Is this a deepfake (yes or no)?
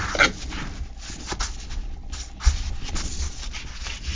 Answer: no